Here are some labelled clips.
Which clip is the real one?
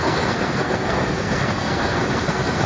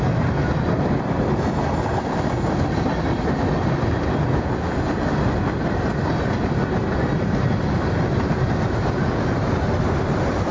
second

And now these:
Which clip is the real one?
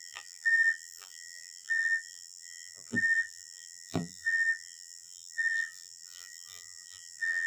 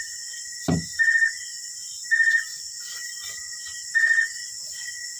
second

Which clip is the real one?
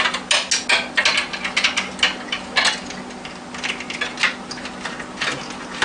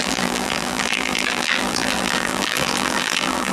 first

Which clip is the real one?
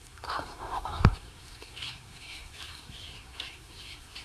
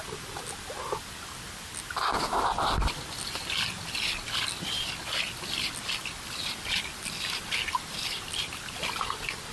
second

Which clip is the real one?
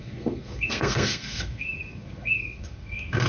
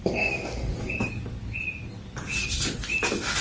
second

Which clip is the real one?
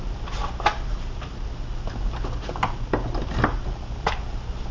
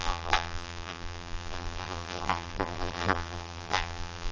first